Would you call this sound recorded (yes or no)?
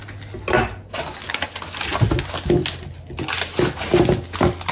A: yes